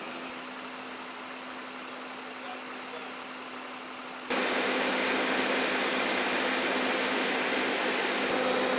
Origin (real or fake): real